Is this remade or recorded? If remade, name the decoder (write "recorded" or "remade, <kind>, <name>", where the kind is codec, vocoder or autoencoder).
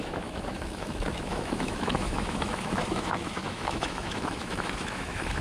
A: remade, autoencoder, DAC-VAE